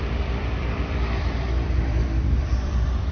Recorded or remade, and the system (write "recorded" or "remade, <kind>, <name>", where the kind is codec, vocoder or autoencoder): remade, vocoder, BigVGAN v2